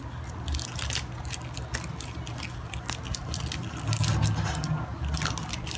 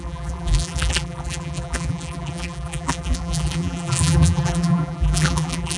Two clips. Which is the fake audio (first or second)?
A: second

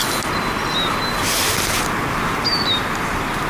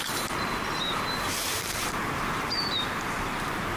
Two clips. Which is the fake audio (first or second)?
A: second